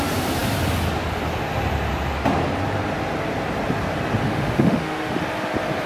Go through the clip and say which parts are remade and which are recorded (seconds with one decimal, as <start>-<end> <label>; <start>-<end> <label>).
0.0-4.2 recorded; 4.2-5.2 remade; 5.2-5.9 recorded